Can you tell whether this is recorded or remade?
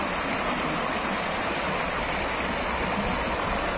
recorded